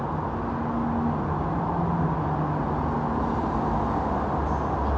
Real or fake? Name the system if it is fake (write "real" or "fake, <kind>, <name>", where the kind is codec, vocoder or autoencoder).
real